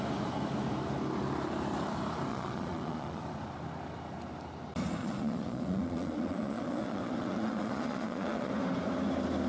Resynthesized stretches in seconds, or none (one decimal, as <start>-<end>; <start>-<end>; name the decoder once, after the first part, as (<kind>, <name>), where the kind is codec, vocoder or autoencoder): 2.3-3.2 (vocoder, Vocos); 5.0-8.5

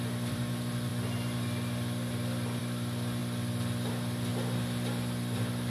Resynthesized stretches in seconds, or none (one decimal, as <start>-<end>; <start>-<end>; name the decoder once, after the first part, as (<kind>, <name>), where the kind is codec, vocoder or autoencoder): 0.0-0.9 (vocoder, BigVGAN v2); 2.6-3.2; 3.9-4.3